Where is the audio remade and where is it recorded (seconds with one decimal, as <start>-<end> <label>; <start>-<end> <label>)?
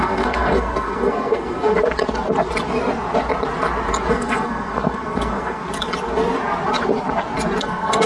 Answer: 0.0-1.8 remade; 1.8-4.1 recorded; 4.1-5.6 remade; 5.6-7.6 recorded; 7.6-8.1 remade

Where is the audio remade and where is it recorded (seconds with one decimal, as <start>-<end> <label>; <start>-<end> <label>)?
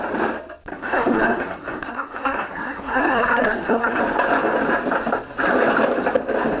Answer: 0.0-0.7 recorded; 0.7-4.0 remade; 4.0-6.6 recorded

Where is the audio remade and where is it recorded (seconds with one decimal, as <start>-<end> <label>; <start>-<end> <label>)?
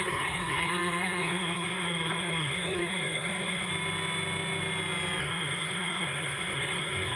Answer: 0.0-3.7 remade; 3.7-5.2 recorded; 5.2-7.2 remade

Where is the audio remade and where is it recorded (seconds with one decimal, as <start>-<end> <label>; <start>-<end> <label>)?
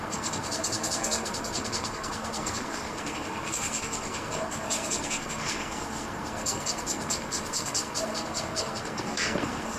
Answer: 0.0-9.8 remade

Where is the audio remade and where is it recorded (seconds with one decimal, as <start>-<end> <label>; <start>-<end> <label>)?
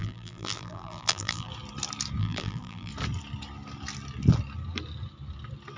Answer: 0.0-1.5 remade; 1.5-2.2 recorded; 2.2-2.9 remade; 2.9-5.8 recorded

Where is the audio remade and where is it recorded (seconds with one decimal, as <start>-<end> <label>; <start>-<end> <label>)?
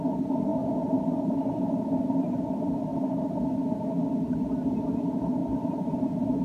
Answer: 0.0-2.9 recorded; 2.9-3.9 remade; 3.9-5.4 recorded; 5.4-6.4 remade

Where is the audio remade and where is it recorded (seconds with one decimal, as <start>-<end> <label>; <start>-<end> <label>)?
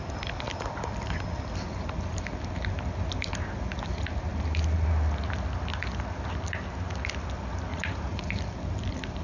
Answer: 0.0-7.7 recorded; 7.7-8.3 remade; 8.3-9.2 recorded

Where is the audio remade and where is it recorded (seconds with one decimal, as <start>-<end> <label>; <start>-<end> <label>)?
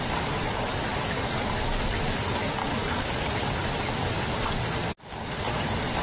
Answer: 0.0-2.6 recorded; 2.6-3.3 remade; 3.3-6.0 recorded